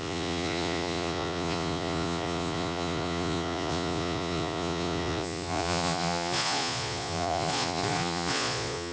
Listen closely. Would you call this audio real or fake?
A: fake